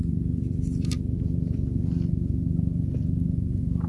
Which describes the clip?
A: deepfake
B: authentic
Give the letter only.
B